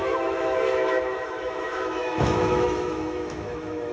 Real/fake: fake